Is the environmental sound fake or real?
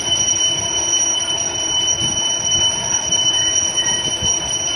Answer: real